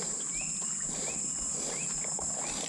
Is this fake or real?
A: real